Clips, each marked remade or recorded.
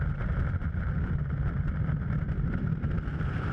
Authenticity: recorded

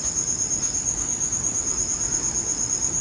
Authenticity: recorded